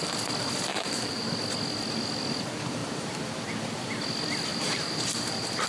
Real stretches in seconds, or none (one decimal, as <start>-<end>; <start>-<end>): 0.0-0.7; 1.3-4.5